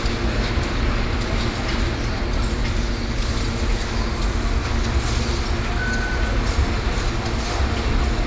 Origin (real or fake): real